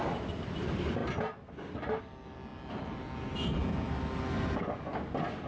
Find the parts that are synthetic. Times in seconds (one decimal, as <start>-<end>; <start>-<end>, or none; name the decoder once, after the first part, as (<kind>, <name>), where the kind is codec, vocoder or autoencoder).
none